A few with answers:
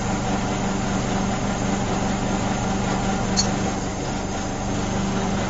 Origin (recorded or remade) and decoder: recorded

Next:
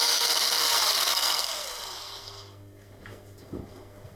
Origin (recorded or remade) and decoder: remade, codec, SNAC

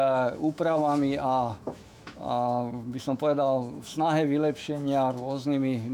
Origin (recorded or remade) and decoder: remade, autoencoder, DAC-VAE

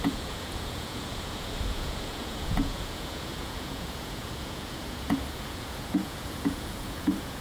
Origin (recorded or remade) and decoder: remade, vocoder, Vocos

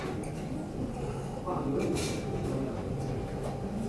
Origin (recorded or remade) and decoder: recorded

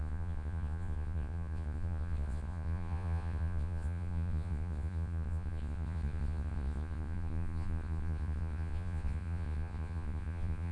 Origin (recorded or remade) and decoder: remade, vocoder, Vocos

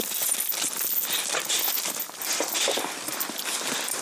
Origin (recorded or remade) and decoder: recorded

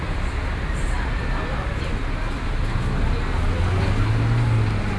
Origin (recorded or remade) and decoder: recorded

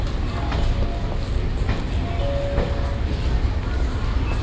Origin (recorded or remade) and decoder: recorded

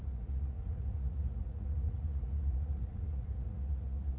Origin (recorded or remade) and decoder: remade, vocoder, Vocos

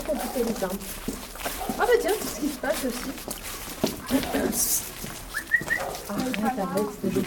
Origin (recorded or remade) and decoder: remade, vocoder, BigVGAN v2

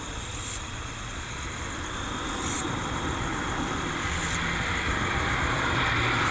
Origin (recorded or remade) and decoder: remade, vocoder, BigVGAN v2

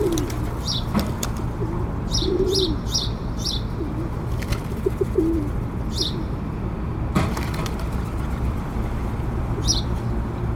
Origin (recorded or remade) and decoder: remade, vocoder, BigVGAN v2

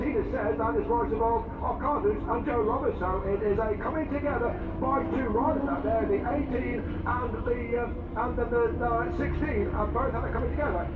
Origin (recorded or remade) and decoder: recorded